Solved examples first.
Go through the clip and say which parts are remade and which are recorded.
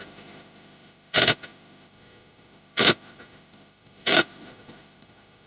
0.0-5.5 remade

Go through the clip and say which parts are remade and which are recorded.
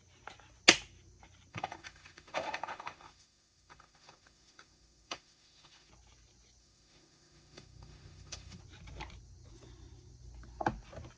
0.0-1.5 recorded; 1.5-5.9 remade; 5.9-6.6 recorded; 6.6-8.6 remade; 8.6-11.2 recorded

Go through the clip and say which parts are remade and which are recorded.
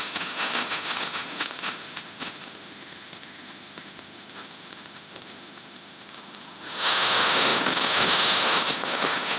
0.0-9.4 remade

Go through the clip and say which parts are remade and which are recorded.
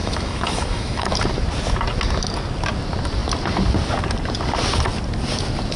0.0-1.1 remade; 1.1-5.8 recorded